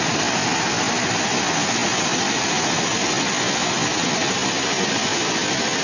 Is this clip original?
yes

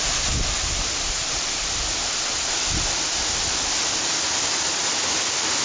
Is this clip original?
yes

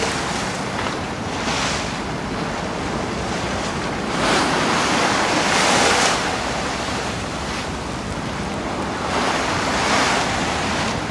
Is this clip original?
yes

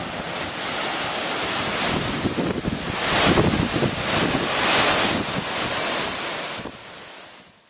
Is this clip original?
yes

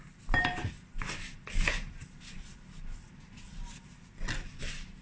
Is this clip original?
yes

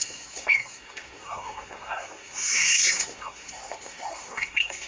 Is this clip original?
no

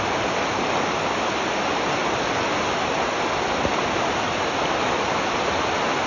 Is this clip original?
yes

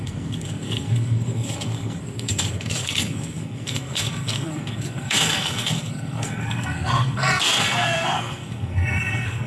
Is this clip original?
no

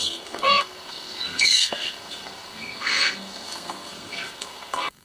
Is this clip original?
no